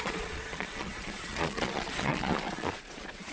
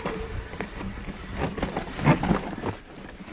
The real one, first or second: second